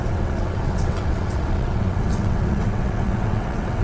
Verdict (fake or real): fake